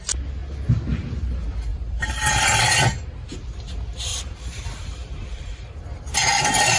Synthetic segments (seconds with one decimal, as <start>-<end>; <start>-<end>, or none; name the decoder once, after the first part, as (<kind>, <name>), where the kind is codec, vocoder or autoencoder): 1.7-2.6 (vocoder, BigVGAN v2); 4.1-5.8